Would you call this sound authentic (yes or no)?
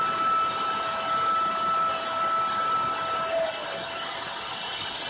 yes